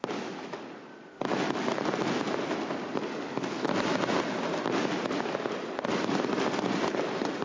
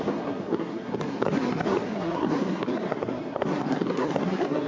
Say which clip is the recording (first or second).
first